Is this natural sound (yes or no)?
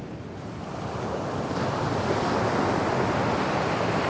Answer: yes